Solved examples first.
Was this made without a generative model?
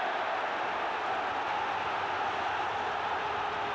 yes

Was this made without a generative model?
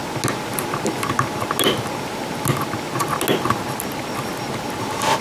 yes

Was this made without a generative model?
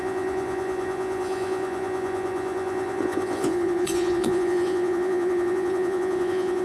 no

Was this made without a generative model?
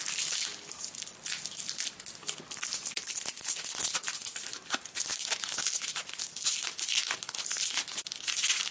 yes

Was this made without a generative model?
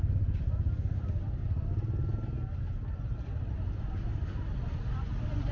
yes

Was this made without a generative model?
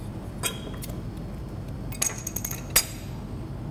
yes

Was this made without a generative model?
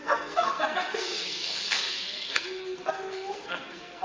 no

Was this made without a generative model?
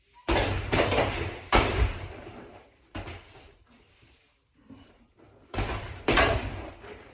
no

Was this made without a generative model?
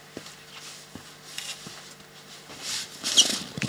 yes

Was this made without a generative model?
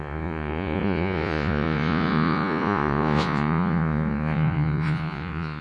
no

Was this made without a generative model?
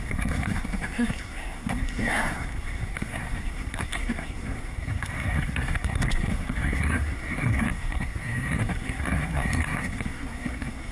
no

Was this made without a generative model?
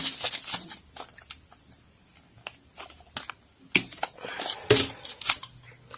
yes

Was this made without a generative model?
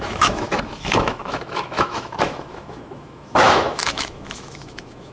no